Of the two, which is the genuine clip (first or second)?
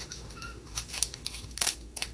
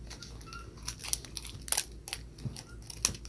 second